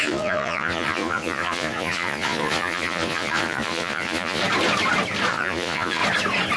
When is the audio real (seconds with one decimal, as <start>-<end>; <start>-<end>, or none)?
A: 4.4-5.3; 6.0-6.6